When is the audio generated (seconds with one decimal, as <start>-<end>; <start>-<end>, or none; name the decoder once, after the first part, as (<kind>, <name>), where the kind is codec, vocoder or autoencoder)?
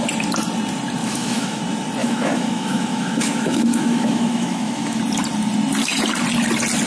1.0-1.6 (autoencoder, DAC-VAE); 2.0-5.0